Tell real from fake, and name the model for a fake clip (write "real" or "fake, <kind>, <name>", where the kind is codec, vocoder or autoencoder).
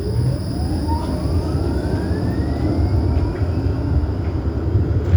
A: real